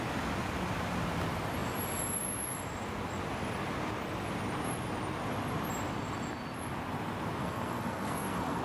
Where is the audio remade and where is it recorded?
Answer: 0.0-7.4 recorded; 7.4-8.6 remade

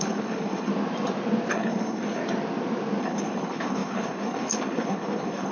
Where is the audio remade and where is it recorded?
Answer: 0.0-0.7 remade; 0.7-1.5 recorded; 1.5-2.2 remade; 2.2-3.0 recorded; 3.0-5.5 remade